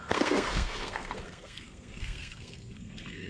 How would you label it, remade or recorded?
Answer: remade